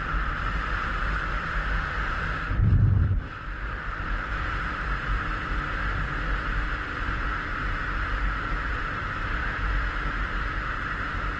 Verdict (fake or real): fake